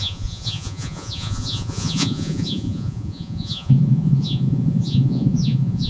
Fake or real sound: fake